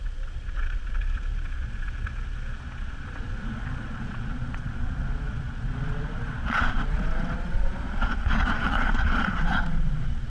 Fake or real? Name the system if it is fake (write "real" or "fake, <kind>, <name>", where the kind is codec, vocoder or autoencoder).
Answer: fake, vocoder, Vocos